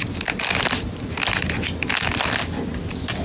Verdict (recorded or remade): recorded